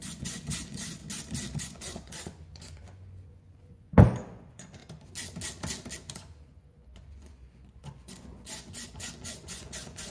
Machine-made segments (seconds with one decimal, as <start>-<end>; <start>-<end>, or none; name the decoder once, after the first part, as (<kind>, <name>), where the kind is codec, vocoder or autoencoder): 0.0-1.0 (vocoder, Vocos); 1.6-4.8; 6.1-10.1